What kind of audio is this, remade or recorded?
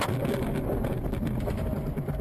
recorded